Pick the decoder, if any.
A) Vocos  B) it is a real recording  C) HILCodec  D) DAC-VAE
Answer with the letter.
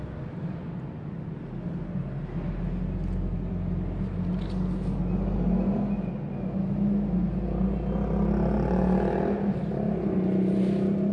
B